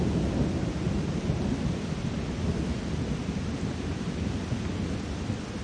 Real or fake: real